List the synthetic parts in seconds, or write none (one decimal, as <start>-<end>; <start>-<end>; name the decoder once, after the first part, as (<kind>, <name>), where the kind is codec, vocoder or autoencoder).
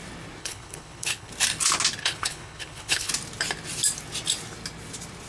0.4-1.3 (codec, HILCodec); 2.0-3.1